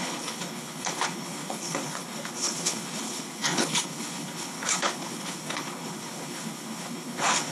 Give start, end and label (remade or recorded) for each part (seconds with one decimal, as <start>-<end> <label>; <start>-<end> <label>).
0.0-7.5 remade